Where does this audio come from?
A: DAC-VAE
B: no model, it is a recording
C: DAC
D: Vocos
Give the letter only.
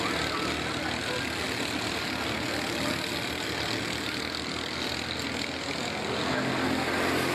B